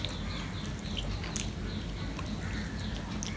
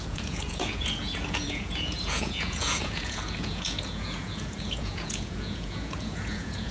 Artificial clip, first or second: second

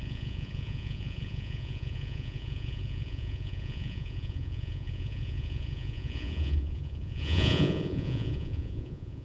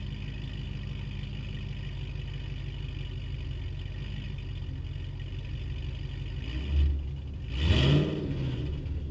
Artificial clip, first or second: first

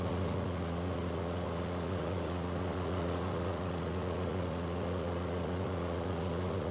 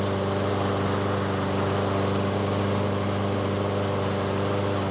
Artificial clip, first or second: first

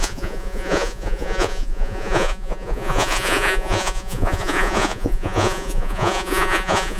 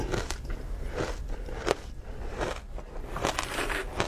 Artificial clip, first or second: first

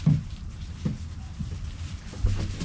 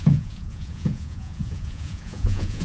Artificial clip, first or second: second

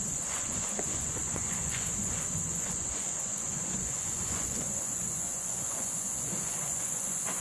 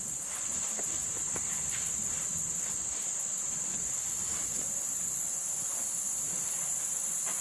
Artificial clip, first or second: first